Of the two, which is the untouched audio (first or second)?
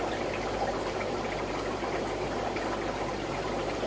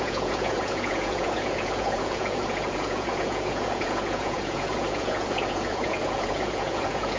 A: first